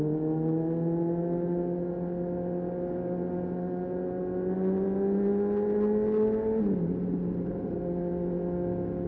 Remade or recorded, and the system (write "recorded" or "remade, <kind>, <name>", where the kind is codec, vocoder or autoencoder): recorded